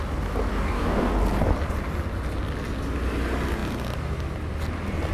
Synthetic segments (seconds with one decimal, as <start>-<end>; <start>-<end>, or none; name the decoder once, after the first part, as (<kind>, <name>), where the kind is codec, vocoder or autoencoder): 0.5-1.1 (codec, DAC)